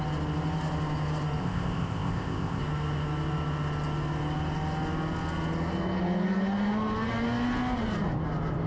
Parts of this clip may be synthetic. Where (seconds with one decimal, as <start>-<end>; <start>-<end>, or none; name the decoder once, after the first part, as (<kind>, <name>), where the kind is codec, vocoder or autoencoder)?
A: 1.4-2.6 (codec, ZipCodec)